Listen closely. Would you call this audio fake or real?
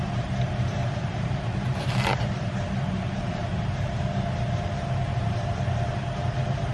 fake